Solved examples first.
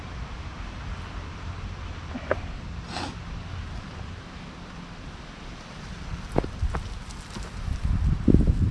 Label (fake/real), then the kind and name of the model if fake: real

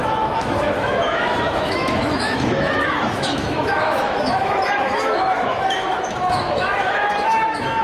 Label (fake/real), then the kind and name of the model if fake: fake, autoencoder, DAC-VAE